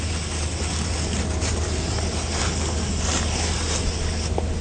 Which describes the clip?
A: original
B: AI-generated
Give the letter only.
A